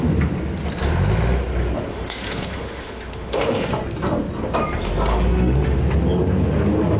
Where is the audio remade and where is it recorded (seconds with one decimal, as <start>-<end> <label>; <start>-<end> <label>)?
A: 0.0-1.9 recorded; 1.9-3.7 remade; 3.7-5.1 recorded; 5.1-5.8 remade; 5.8-7.0 recorded